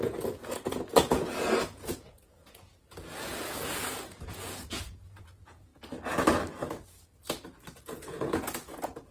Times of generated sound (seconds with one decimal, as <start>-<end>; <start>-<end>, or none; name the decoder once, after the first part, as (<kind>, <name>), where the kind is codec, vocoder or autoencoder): 0.0-5.7 (vocoder, Vocos); 7.8-9.1